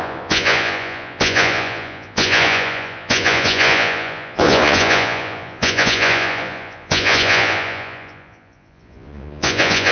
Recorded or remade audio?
remade